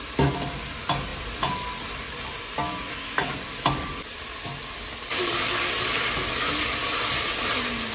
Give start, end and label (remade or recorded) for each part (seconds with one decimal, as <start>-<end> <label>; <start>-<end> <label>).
0.0-7.9 recorded